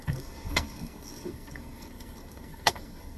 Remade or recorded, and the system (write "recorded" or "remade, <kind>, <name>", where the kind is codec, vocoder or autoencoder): remade, codec, SNAC